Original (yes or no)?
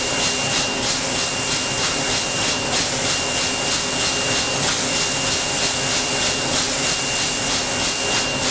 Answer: yes